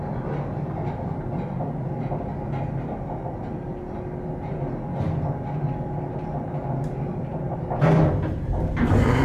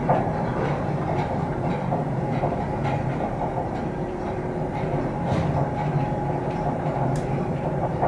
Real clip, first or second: first